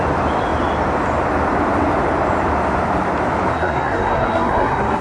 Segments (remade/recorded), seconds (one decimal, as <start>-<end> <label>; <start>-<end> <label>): 0.0-3.5 recorded; 3.5-5.0 remade